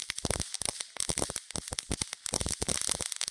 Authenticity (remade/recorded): recorded